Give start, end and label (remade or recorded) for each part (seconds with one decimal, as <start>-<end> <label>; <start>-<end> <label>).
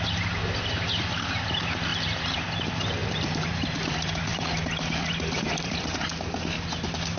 0.0-3.0 recorded; 3.0-6.0 remade; 6.0-7.2 recorded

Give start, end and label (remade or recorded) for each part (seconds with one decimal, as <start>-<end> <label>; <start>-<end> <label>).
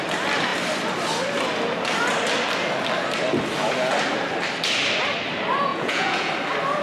0.0-5.7 recorded; 5.7-6.3 remade; 6.3-6.8 recorded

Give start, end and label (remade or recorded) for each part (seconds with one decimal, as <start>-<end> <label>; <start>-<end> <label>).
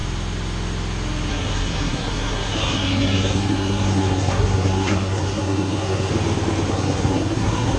0.0-1.3 recorded; 1.3-6.1 remade; 6.1-6.7 recorded; 6.7-7.8 remade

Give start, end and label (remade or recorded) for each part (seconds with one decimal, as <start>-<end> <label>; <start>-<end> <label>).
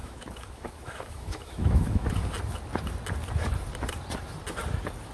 0.0-2.1 remade; 2.1-5.1 recorded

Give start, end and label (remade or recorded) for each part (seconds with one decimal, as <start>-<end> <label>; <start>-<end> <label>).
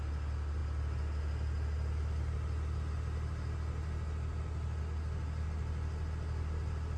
0.0-7.0 recorded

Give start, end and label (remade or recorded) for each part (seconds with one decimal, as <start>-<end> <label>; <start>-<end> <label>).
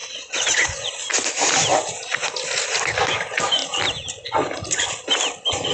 0.0-0.9 remade; 0.9-5.7 recorded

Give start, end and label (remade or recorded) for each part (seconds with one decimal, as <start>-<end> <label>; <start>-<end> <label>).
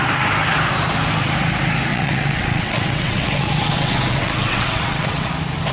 0.0-1.9 recorded; 1.9-5.3 remade; 5.3-5.7 recorded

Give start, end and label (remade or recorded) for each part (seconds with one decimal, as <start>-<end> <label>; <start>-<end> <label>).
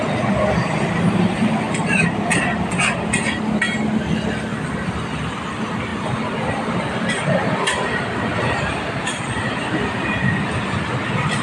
0.0-11.4 recorded